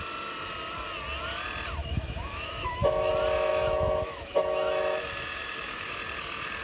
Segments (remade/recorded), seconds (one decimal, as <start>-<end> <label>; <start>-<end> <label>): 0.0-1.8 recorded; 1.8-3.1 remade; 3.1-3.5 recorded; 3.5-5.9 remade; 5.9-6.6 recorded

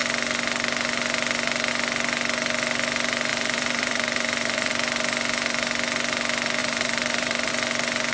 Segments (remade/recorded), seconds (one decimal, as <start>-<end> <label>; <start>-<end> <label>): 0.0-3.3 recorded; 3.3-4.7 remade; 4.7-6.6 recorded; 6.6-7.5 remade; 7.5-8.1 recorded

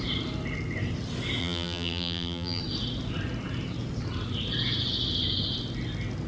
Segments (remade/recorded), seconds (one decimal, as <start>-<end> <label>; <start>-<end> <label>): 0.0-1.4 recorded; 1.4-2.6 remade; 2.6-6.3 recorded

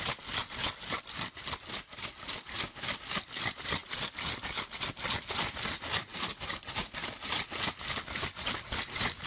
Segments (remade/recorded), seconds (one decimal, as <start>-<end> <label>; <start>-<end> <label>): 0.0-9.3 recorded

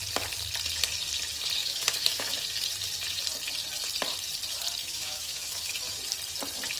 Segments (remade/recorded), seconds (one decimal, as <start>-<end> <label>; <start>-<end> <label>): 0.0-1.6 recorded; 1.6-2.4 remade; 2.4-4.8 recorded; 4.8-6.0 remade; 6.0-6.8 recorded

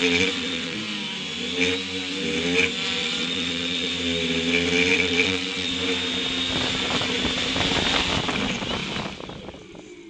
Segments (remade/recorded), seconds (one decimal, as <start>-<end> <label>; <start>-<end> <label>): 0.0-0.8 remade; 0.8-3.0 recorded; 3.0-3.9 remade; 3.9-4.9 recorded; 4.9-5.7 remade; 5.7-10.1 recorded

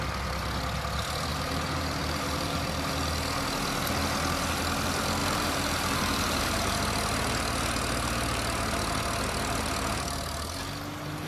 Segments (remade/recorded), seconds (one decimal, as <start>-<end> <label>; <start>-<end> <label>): 0.0-1.3 recorded; 1.3-2.9 remade; 2.9-5.2 recorded; 5.2-6.4 remade; 6.4-11.3 recorded

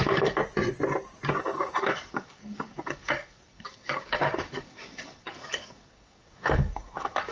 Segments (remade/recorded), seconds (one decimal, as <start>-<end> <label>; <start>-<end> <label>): 0.0-0.4 remade; 0.4-1.3 recorded; 1.3-7.3 remade